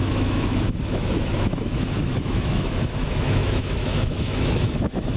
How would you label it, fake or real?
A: fake